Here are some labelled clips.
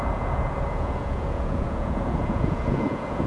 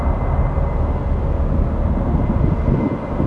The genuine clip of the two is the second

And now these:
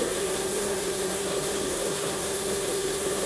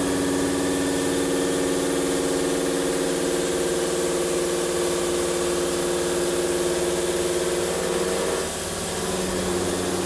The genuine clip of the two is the second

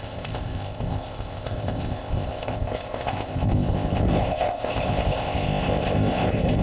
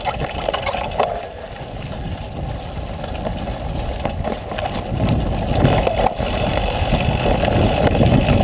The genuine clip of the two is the second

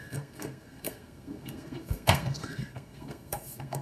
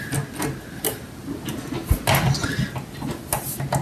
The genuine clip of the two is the second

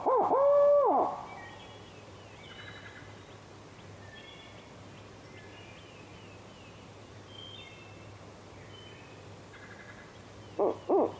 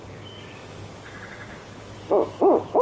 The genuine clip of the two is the first